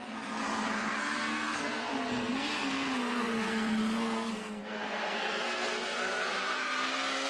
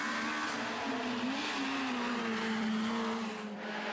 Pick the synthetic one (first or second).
first